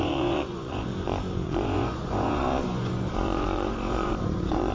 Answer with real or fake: fake